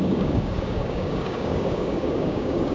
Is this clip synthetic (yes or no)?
yes